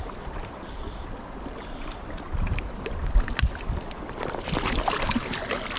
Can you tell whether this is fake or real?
real